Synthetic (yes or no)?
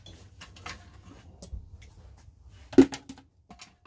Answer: no